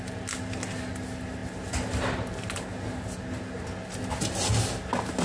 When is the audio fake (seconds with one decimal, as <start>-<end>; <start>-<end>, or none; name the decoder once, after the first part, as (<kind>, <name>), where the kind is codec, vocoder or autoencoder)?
none